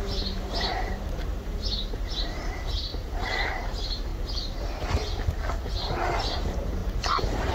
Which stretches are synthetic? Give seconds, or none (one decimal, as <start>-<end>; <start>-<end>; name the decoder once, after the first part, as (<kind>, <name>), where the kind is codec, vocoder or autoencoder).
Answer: 0.0-4.1 (vocoder, BigVGAN v2); 6.2-6.8